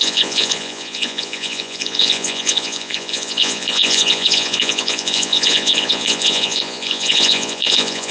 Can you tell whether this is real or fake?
fake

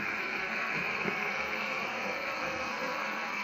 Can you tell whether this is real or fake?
fake